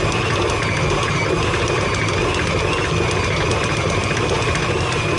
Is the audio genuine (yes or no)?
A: yes